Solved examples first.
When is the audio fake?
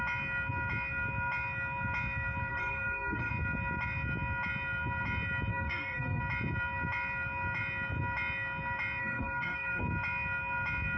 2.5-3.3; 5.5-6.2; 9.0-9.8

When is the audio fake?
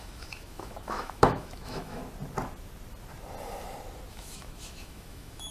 0.0-2.0; 4.1-5.5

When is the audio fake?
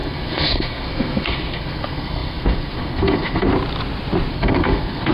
0.0-3.5; 4.3-5.1